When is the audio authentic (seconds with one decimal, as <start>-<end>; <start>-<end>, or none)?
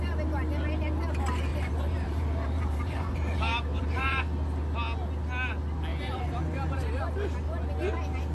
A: 0.0-1.5; 4.2-5.9; 7.0-8.3